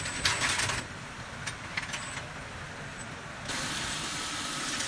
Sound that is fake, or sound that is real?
real